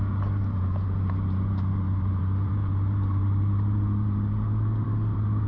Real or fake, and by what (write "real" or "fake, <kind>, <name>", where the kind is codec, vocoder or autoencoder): fake, vocoder, BigVGAN v2